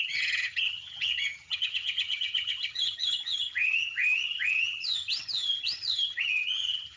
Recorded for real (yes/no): no